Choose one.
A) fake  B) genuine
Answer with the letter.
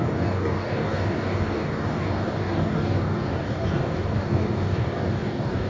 A